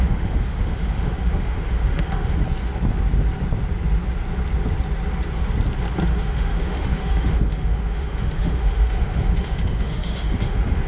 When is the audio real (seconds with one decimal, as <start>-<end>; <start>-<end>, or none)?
2.4-6.1